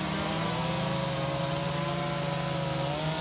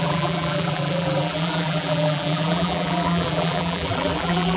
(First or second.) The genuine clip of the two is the first